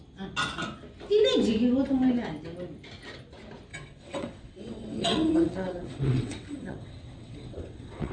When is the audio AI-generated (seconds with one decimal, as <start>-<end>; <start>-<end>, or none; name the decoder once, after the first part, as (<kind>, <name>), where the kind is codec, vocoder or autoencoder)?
3.7-8.1 (vocoder, WaveNeXt)